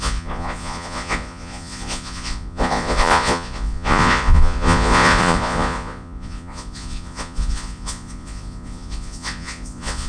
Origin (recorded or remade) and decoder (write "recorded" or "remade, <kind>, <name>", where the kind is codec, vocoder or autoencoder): remade, vocoder, Vocos